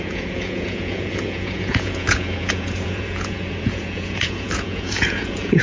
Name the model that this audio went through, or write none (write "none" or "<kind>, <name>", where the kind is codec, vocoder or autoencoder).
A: vocoder, Vocos